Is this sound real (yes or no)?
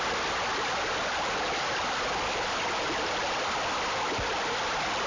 yes